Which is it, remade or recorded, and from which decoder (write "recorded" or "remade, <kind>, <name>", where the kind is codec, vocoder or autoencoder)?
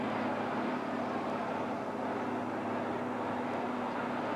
recorded